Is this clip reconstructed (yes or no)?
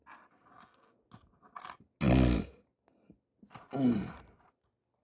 no